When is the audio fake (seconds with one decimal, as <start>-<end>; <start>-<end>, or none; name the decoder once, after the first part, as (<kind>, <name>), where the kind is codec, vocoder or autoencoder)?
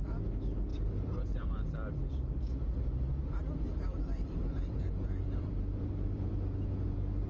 0.7-2.1 (vocoder, BigVGAN v2); 3.9-6.3